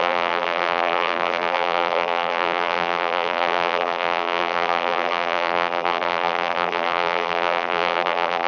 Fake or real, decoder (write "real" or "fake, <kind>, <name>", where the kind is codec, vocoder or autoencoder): fake, vocoder, BigVGAN v2